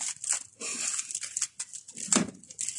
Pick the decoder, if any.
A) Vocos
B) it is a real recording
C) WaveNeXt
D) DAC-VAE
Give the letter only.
B